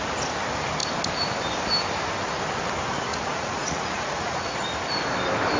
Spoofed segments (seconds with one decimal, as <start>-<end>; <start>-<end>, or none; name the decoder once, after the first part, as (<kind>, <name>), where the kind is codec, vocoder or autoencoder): 3.1-4.6 (vocoder, Vocos)